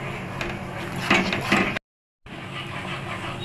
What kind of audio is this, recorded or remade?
recorded